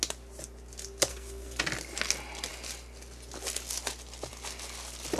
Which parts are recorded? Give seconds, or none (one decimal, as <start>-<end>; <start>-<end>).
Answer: 0.0-1.1; 1.6-5.2